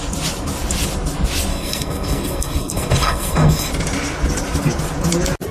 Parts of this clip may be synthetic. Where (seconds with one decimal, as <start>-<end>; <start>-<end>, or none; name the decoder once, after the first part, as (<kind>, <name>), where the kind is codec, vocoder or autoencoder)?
1.5-3.7 (codec, SNAC)